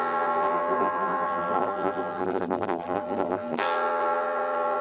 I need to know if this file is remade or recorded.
remade